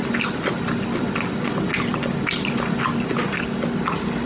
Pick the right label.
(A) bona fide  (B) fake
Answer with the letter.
A